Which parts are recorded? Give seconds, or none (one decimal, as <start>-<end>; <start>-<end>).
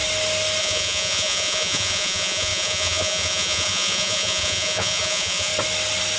0.0-0.6; 5.5-6.2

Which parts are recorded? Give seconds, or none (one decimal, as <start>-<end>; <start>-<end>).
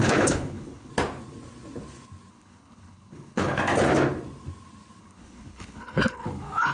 0.9-2.3; 3.6-5.0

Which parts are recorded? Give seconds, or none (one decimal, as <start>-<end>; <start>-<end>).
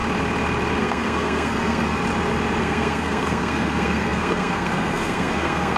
0.0-0.8; 2.0-2.6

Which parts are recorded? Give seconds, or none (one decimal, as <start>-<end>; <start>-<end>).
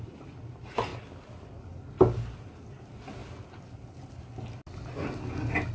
0.0-5.7